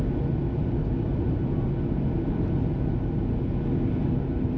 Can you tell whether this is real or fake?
real